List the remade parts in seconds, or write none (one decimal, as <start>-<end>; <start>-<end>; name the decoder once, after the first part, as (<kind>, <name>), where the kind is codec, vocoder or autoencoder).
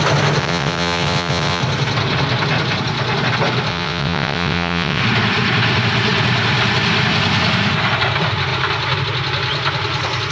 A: 0.4-1.6 (vocoder, WaveNeXt); 3.7-5.0